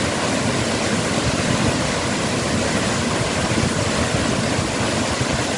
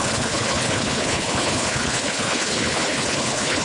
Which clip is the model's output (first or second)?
second